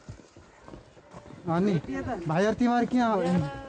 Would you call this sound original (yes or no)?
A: yes